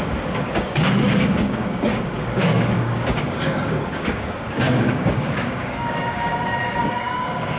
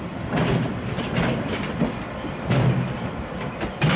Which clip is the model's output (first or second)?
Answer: first